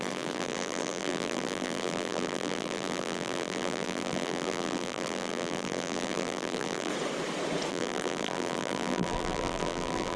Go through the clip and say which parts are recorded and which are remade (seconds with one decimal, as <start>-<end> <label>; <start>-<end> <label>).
0.0-6.9 remade; 6.9-7.7 recorded; 7.7-10.2 remade